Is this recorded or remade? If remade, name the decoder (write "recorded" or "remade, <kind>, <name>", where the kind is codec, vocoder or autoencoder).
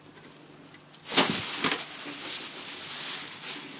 recorded